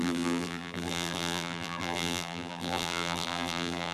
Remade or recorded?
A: remade